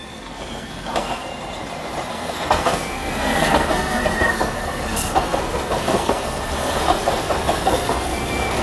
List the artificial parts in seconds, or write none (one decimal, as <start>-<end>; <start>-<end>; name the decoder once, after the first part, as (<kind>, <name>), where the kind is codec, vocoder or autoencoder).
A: 0.0-1.3 (codec, SNAC); 2.1-8.6